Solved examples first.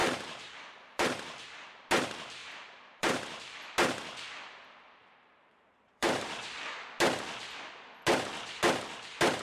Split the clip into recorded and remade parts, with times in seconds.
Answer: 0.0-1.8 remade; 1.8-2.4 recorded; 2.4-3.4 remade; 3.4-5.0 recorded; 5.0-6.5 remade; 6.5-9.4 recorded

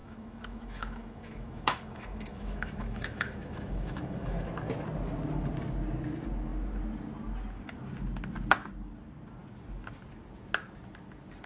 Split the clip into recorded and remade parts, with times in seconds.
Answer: 0.0-4.5 remade; 4.5-11.5 recorded

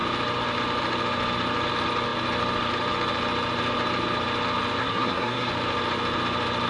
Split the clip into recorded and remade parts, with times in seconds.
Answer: 0.0-4.8 recorded; 4.8-5.5 remade; 5.5-6.7 recorded